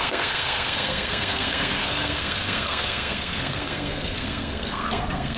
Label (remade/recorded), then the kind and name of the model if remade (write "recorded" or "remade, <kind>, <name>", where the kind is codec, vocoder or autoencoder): remade, codec, SNAC